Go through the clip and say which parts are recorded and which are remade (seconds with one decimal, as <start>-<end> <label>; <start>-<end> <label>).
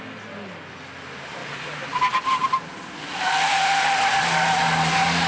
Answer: 0.0-5.3 recorded